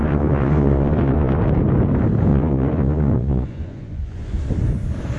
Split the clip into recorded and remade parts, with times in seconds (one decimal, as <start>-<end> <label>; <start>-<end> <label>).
0.0-1.4 remade; 1.4-2.3 recorded; 2.3-4.4 remade; 4.4-5.2 recorded